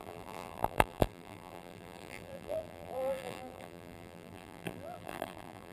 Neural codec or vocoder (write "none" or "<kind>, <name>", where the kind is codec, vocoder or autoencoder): vocoder, BigVGAN v2